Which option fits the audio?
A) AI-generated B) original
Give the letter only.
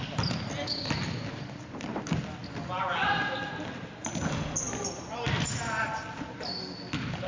B